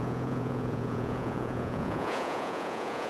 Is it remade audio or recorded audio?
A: remade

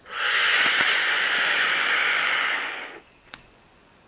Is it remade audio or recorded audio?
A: remade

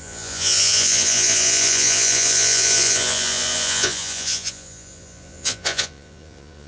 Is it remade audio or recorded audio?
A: remade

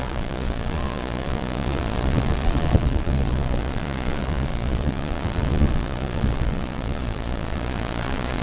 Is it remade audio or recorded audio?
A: remade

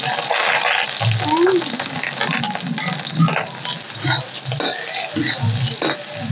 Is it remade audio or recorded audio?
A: recorded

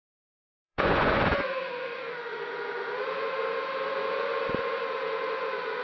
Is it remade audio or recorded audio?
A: remade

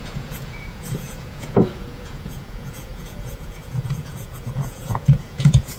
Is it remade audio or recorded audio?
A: remade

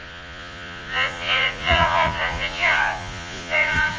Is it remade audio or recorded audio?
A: remade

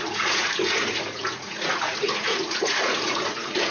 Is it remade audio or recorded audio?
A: remade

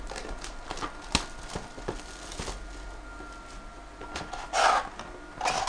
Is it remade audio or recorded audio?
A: recorded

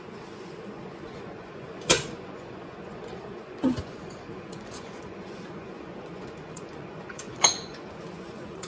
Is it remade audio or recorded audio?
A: remade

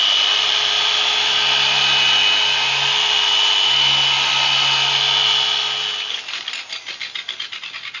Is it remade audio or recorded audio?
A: recorded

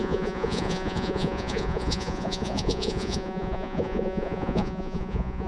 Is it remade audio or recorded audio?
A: remade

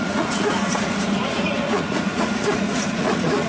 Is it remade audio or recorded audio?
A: remade